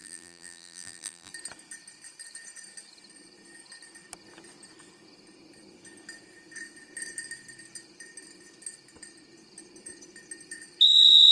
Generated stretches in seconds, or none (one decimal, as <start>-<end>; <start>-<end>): 0.0-1.3